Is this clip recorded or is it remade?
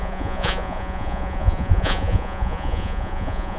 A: remade